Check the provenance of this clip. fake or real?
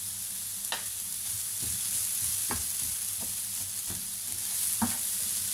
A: real